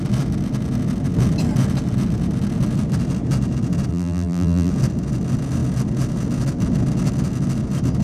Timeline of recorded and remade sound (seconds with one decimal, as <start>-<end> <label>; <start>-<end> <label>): 0.0-3.9 recorded; 3.9-4.7 remade; 4.7-8.0 recorded